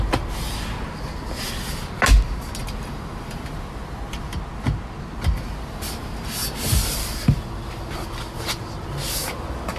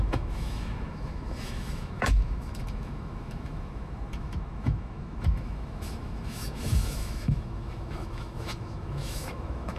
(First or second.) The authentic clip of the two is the first